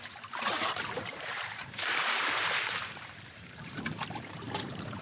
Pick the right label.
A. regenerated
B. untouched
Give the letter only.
A